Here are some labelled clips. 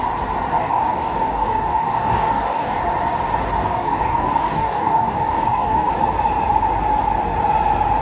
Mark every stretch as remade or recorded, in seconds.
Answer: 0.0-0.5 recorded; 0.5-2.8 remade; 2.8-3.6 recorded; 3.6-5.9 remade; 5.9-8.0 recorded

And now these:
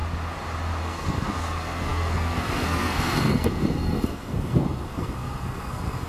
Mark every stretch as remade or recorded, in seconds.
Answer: 0.0-0.8 recorded; 0.8-6.1 remade